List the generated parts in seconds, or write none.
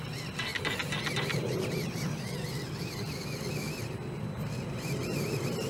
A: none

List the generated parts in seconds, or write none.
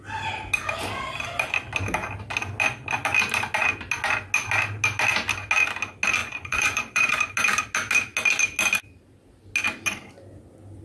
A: 6.2-7.3 (vocoder, Vocos)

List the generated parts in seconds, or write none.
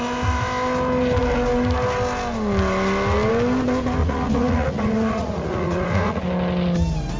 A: 4.0-6.2 (vocoder, Vocos)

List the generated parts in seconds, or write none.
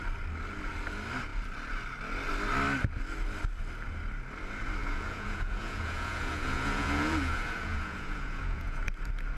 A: 4.8-8.8 (vocoder, Vocos)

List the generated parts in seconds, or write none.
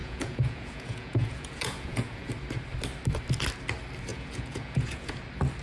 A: 0.0-2.3 (vocoder, Vocos); 4.1-5.1